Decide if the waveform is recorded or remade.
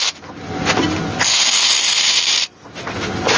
recorded